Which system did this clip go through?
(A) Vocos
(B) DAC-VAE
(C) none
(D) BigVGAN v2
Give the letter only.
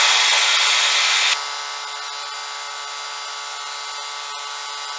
C